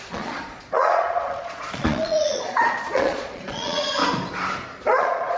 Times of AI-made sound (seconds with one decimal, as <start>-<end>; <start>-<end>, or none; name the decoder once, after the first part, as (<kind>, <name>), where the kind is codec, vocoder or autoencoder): 0.0-4.0 (vocoder, Vocos); 5.0-5.4